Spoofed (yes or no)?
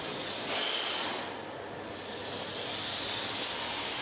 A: no